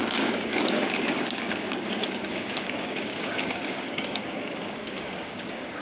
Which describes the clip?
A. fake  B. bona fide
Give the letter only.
A